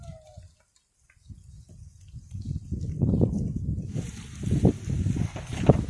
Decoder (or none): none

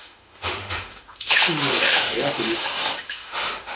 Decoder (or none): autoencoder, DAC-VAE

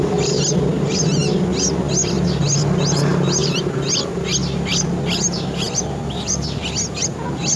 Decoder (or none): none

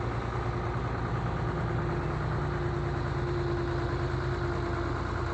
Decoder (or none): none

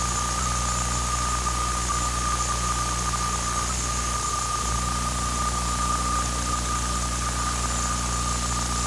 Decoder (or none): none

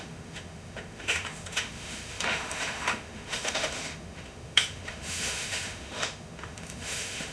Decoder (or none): autoencoder, DAC-VAE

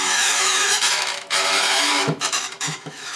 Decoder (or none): autoencoder, DAC-VAE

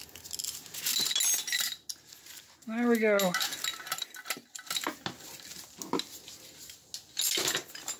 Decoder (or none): none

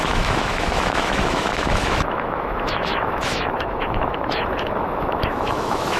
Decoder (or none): autoencoder, DAC-VAE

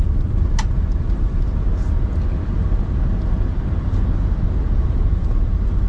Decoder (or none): none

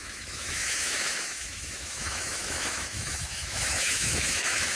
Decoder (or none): autoencoder, DAC-VAE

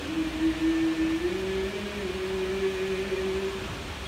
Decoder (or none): none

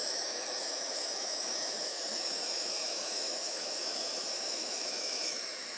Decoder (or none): autoencoder, DAC-VAE